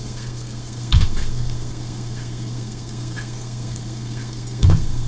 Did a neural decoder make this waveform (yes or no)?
yes